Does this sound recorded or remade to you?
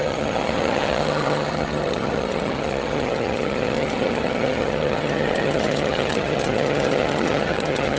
remade